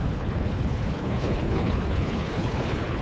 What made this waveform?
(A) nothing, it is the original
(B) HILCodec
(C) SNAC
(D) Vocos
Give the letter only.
B